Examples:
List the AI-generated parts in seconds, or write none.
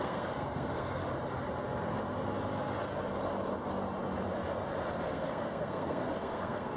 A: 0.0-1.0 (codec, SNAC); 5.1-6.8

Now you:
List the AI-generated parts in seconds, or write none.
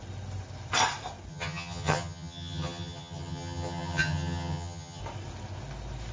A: 1.3-5.0 (vocoder, HiFi-GAN)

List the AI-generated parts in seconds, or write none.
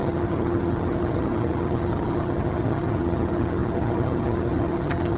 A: 0.0-5.2 (vocoder, HiFi-GAN)